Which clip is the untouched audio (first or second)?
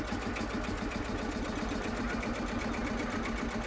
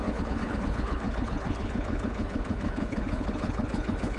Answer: first